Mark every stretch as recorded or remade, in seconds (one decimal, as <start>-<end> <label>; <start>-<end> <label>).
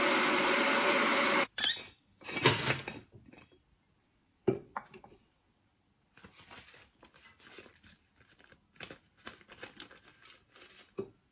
0.0-4.0 recorded; 4.0-5.7 remade; 5.7-11.3 recorded